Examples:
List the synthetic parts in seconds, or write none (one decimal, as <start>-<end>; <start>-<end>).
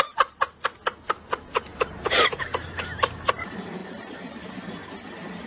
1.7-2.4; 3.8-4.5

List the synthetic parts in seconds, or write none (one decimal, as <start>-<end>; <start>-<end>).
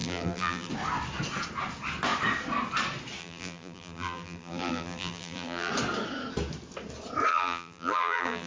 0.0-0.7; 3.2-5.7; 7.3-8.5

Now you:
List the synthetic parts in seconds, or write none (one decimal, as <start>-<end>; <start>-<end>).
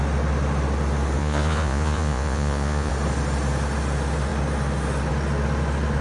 1.2-2.9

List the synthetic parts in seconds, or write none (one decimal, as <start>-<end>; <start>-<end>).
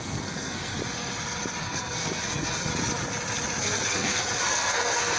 0.0-0.7; 1.6-2.7; 3.6-5.2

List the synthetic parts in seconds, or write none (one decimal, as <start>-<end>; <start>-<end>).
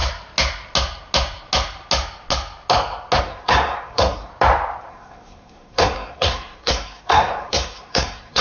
3.2-4.3; 4.9-8.4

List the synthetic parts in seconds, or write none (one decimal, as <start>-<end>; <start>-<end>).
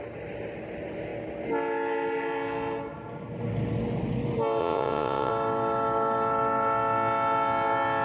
4.6-5.3